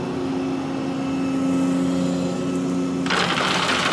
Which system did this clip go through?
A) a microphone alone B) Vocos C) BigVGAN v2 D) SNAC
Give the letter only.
A